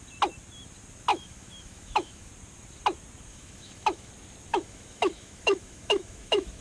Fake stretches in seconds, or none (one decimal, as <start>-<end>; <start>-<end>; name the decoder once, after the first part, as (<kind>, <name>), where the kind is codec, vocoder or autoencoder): 1.1-2.3 (autoencoder, DAC-VAE); 3.3-4.1; 4.5-6.6